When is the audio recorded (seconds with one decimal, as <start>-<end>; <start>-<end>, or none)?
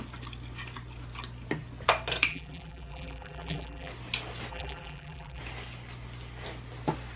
0.0-2.3; 3.9-4.5; 5.4-7.2